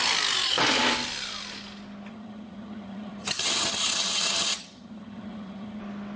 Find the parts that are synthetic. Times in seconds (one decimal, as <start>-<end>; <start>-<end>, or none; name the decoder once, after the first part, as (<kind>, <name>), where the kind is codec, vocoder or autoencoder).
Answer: 2.1-5.8 (vocoder, HiFi-GAN)